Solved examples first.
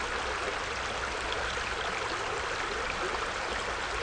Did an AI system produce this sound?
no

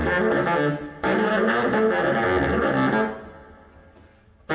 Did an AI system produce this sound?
no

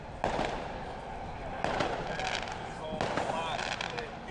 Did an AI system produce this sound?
no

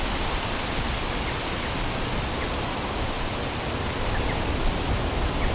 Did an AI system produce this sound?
no